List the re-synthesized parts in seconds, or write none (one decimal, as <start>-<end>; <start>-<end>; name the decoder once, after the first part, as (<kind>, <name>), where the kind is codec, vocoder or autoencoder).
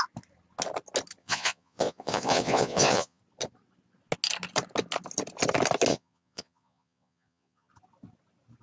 1.2-3.2 (vocoder, Vocos); 5.9-7.7